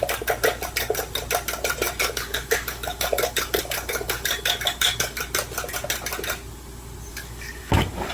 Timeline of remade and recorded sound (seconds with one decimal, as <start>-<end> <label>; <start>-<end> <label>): 0.0-2.0 recorded; 2.0-5.2 remade; 5.2-7.1 recorded; 7.1-8.1 remade